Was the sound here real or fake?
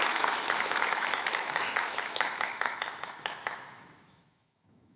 fake